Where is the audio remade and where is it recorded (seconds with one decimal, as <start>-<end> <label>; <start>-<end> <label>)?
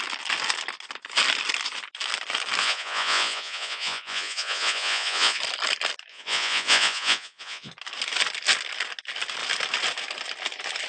0.0-2.6 recorded; 2.6-5.4 remade; 5.4-6.1 recorded; 6.1-7.7 remade; 7.7-10.9 recorded